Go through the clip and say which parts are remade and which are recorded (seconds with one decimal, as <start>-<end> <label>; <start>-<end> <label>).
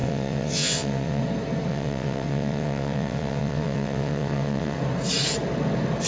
0.0-1.2 remade; 1.2-1.7 recorded; 1.7-4.8 remade; 4.8-6.1 recorded